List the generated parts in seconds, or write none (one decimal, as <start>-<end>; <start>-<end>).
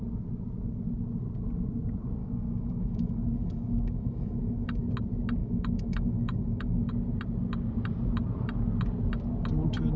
2.2-4.9; 5.4-6.9